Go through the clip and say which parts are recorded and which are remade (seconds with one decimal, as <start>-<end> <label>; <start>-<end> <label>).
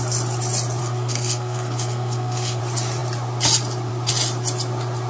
0.0-0.8 recorded; 0.8-2.6 remade; 2.6-5.1 recorded